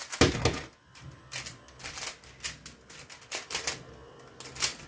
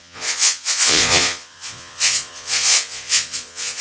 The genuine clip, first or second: first